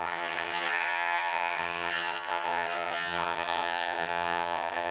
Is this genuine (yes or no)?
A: no